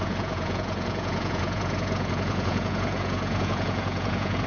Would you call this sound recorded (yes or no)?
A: no